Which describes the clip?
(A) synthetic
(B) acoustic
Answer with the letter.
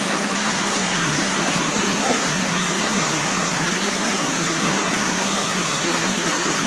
A